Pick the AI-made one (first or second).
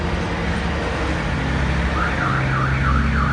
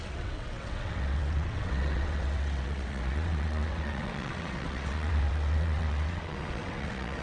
second